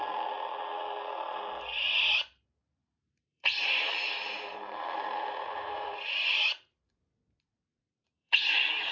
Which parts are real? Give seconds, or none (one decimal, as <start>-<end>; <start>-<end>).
0.0-2.8; 6.1-8.0